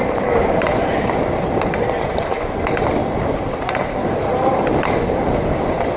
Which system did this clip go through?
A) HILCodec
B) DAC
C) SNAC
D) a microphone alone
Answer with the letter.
D